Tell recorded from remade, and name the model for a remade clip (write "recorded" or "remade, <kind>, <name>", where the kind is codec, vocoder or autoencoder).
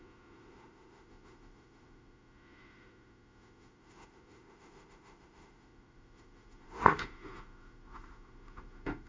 remade, autoencoder, DAC-VAE